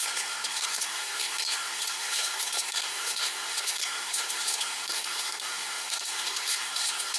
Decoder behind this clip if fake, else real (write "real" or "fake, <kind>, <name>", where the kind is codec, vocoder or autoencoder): fake, codec, SNAC